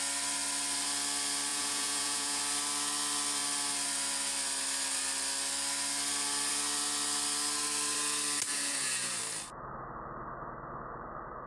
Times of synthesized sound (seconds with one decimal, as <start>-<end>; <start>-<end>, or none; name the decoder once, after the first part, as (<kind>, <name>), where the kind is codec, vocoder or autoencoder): 1.5-2.4 (vocoder, Vocos); 8.5-9.2

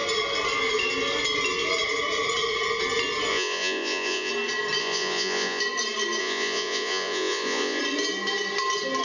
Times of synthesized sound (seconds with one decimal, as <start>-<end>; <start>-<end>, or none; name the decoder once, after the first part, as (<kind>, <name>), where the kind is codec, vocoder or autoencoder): 3.3-4.3 (vocoder, Vocos); 4.8-5.6; 6.2-7.8

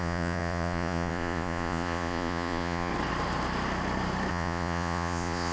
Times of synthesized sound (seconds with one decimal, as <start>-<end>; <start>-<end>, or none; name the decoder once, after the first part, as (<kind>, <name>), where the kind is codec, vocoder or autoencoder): 0.0-2.9 (vocoder, Vocos); 4.3-5.5

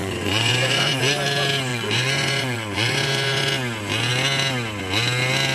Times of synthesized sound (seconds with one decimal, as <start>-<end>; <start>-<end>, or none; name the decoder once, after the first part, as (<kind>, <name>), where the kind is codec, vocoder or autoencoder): 0.0-1.0 (vocoder, Vocos); 1.7-3.5